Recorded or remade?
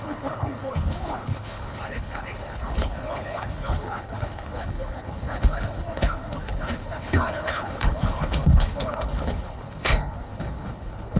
remade